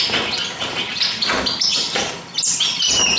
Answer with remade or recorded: recorded